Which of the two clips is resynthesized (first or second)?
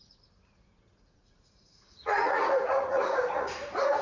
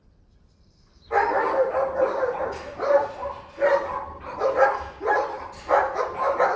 first